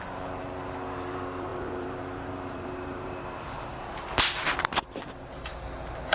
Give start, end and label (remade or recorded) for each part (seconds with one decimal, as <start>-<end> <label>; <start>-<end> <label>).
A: 0.0-6.1 remade